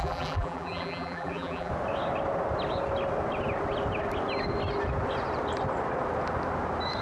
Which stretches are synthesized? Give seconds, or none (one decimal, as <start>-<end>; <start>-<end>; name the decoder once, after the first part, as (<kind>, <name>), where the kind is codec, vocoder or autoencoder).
0.0-1.7 (vocoder, BigVGAN v2)